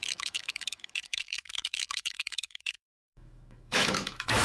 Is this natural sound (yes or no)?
no